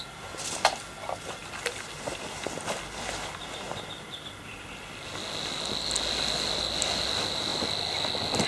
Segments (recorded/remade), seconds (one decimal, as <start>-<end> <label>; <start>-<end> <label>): 0.0-8.5 recorded

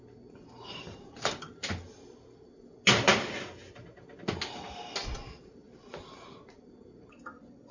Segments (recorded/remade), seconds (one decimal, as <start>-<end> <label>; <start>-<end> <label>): 0.0-7.7 recorded